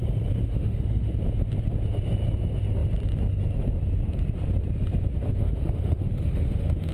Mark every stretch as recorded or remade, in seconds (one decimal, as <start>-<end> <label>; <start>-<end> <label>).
0.0-0.4 recorded; 0.4-1.1 remade; 1.1-5.3 recorded; 5.3-6.9 remade